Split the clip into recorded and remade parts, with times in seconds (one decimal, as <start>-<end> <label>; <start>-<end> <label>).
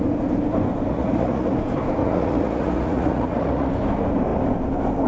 0.0-0.9 recorded; 0.9-1.5 remade; 1.5-2.0 recorded; 2.0-3.7 remade; 3.7-5.1 recorded